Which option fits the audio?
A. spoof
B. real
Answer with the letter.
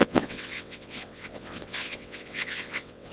A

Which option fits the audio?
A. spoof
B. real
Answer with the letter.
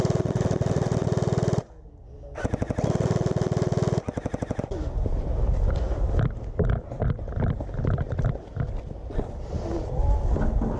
B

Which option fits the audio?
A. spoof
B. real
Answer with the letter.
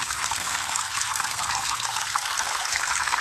A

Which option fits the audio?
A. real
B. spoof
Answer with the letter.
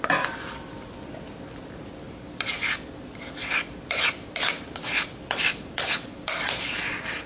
B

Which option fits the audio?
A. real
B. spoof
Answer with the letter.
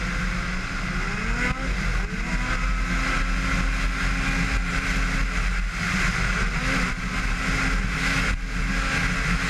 A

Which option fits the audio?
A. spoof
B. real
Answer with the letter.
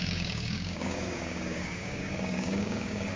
A